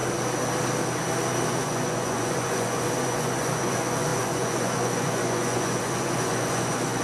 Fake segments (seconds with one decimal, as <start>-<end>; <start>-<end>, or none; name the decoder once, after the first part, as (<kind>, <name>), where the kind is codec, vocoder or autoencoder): 1.5-7.0 (vocoder, Vocos)